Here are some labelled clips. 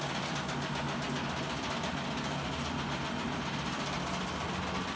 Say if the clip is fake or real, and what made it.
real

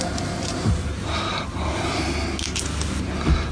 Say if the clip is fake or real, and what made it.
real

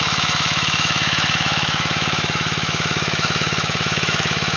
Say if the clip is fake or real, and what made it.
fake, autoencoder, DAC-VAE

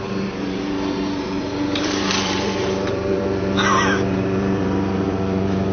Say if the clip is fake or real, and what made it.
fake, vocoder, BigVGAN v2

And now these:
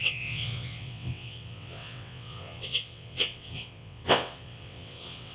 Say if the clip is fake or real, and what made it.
fake, vocoder, WaveNeXt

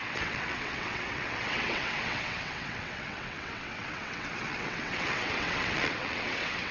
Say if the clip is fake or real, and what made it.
fake, vocoder, WaveNeXt